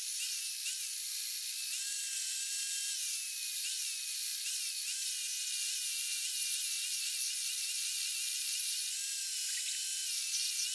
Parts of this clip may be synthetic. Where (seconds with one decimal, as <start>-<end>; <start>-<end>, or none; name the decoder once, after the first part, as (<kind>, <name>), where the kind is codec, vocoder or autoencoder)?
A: none